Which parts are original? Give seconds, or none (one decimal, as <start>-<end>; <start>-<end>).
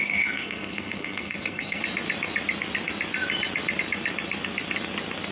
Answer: 1.8-5.3